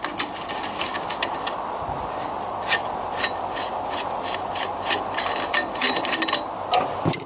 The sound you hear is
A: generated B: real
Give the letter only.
B